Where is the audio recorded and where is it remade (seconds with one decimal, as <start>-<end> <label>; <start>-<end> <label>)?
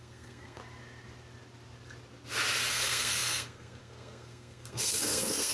0.0-0.6 remade; 0.6-2.7 recorded; 2.7-5.5 remade